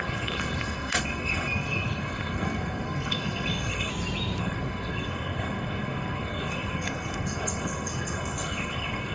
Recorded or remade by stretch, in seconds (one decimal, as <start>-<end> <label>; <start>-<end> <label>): 0.0-3.9 remade; 3.9-4.4 recorded; 4.4-9.1 remade